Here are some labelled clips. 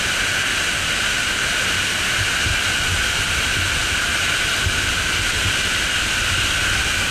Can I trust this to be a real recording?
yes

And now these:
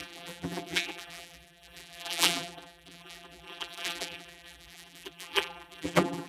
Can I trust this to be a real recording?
no